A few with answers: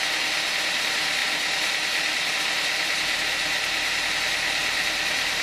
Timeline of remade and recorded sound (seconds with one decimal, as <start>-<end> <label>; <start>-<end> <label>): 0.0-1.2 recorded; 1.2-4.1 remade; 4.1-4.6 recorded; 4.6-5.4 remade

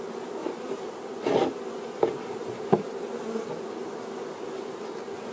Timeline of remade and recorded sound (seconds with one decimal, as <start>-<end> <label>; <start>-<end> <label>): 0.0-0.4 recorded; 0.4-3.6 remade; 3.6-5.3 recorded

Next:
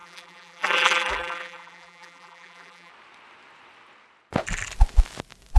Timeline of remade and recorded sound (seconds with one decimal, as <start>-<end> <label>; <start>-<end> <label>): 0.0-2.9 remade; 2.9-5.6 recorded

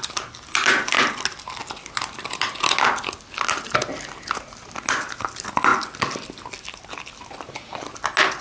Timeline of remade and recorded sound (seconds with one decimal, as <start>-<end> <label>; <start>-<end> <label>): 0.0-1.6 recorded; 1.6-2.5 remade; 2.5-5.7 recorded; 5.7-7.1 remade; 7.1-8.4 recorded

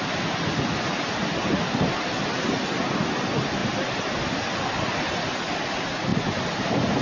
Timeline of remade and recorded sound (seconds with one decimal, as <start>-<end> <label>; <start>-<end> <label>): 0.0-7.0 recorded

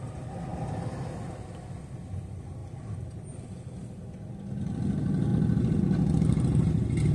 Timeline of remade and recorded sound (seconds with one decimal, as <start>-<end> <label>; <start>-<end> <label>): 0.0-5.3 recorded; 5.3-5.8 remade; 5.8-7.1 recorded

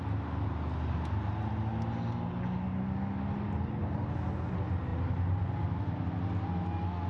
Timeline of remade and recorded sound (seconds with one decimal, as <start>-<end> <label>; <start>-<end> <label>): 0.0-4.9 recorded; 4.9-5.5 remade; 5.5-7.1 recorded

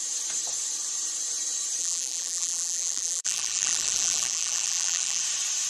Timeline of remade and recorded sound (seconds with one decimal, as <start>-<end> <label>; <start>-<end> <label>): 0.0-1.8 recorded; 1.8-5.2 remade; 5.2-5.7 recorded